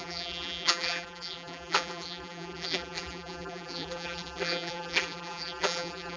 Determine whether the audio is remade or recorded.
remade